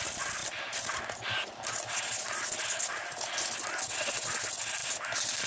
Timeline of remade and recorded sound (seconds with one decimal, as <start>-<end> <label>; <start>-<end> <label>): 0.0-5.5 recorded